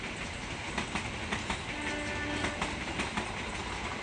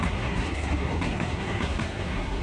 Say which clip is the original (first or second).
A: first